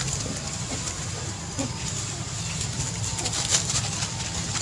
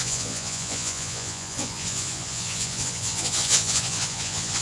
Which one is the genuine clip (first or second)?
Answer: first